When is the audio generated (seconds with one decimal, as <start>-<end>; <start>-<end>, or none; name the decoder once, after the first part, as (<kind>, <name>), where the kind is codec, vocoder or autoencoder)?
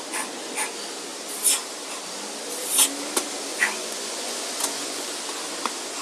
3.5-5.1 (vocoder, Vocos)